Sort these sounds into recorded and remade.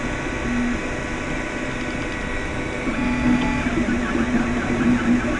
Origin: recorded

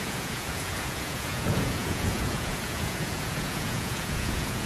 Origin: remade